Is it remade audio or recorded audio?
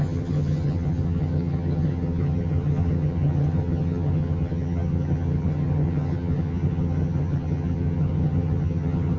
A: remade